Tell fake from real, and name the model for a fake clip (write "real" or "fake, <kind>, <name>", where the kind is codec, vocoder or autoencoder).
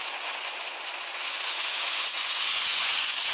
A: fake, vocoder, Vocos